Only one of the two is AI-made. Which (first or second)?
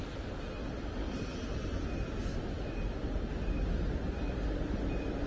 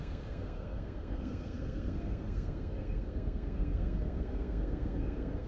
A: second